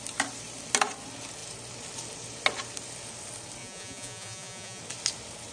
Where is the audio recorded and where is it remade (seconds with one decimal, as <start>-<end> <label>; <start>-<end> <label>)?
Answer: 0.0-3.6 recorded; 3.6-4.8 remade; 4.8-5.5 recorded